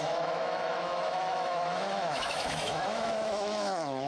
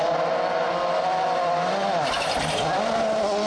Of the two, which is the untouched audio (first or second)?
second